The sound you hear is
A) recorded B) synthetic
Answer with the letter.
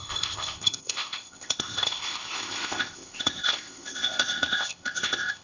B